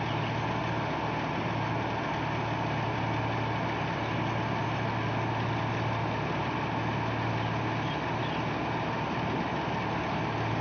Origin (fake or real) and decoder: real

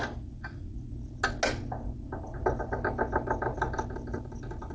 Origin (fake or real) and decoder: real